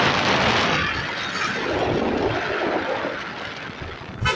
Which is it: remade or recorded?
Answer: recorded